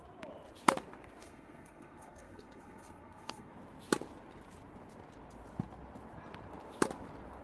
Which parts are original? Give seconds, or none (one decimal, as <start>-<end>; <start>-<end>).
0.0-1.2; 3.5-7.4